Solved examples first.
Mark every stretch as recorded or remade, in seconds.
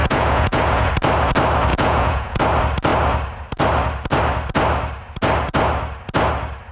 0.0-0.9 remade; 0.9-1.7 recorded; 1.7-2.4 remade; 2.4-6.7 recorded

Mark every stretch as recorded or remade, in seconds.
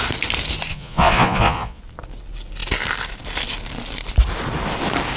0.0-0.7 recorded; 0.7-1.8 remade; 1.8-5.2 recorded